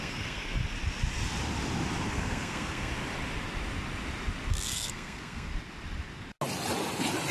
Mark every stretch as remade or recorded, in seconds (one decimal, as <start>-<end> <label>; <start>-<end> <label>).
0.0-0.6 remade; 0.6-2.1 recorded; 2.1-2.9 remade; 2.9-4.5 recorded; 4.5-5.5 remade; 5.5-7.3 recorded